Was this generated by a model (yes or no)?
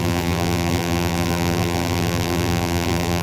yes